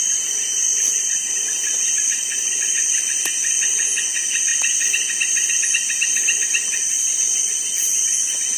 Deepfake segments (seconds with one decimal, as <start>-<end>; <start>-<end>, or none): 0.7-3.0